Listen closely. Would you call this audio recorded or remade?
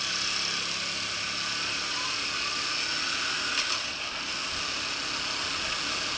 recorded